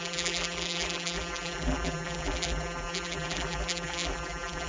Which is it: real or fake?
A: fake